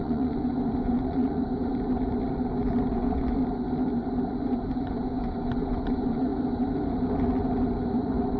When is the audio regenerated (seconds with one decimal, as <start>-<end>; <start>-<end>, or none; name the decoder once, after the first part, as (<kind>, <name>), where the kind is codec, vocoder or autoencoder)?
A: 0.0-1.7 (vocoder, Vocos); 2.9-3.4; 4.7-6.3; 7.9-8.4